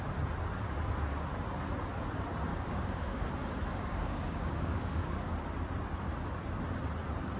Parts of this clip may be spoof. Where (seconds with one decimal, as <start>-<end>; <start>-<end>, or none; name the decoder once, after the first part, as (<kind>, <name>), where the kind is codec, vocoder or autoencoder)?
2.5-3.3 (codec, DAC); 3.7-5.3